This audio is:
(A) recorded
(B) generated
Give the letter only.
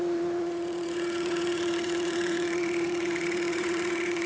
B